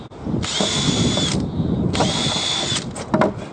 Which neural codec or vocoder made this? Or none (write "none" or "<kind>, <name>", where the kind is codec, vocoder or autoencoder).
none